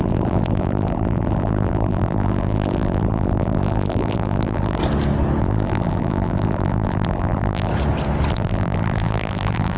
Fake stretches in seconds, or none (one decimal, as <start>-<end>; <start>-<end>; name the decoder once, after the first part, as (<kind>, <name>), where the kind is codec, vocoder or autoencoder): 0.0-4.8 (vocoder, BigVGAN v2); 5.4-7.7; 8.3-9.8

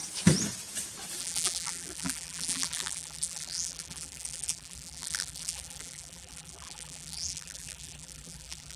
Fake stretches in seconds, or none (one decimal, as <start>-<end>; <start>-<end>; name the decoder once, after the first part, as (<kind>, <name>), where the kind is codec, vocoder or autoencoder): 1.2-8.8 (vocoder, BigVGAN v2)

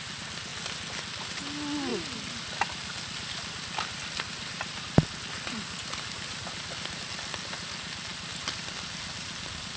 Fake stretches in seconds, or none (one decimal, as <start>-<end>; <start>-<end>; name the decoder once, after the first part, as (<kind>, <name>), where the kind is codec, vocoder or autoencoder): 1.9-7.0 (vocoder, BigVGAN v2)

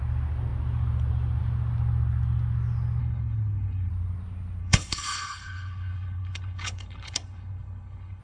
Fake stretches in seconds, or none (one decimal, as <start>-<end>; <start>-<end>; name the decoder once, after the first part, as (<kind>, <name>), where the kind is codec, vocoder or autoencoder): 3.0-3.9 (codec, HILCodec); 4.6-8.2

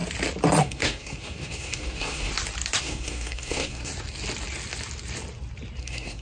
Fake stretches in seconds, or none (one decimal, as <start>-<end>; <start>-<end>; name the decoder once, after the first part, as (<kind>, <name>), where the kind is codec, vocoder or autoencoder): 0.6-2.3 (codec, SNAC); 2.8-3.9; 5.8-6.2

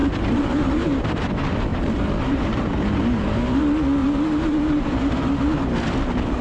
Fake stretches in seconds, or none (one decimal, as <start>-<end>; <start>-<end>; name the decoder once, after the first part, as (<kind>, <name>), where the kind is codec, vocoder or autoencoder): 0.0-1.2 (vocoder, BigVGAN v2); 1.7-3.6; 4.0-5.0

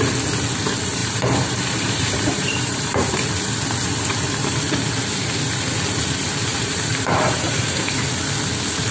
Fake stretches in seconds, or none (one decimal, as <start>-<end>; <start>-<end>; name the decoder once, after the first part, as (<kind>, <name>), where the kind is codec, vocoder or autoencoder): 1.0-3.1 (vocoder, BigVGAN v2); 6.5-8.0